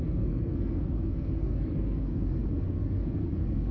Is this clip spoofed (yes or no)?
yes